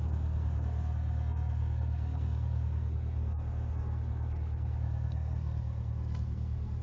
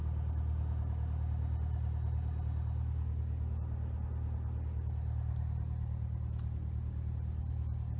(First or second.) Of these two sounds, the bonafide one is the second